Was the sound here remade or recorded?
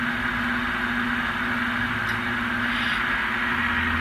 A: recorded